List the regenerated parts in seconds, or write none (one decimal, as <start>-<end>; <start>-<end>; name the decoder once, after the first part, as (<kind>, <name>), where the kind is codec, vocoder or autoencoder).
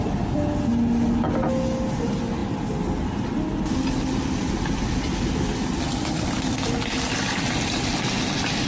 none